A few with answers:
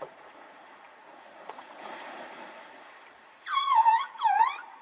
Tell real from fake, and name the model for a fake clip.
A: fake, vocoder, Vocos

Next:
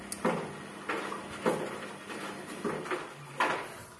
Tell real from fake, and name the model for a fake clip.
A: real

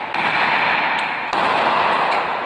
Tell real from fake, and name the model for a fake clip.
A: real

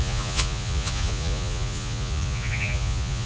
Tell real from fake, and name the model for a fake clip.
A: fake, vocoder, Vocos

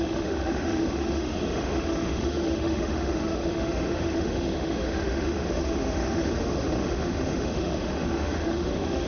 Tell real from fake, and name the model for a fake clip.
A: fake, autoencoder, DAC-VAE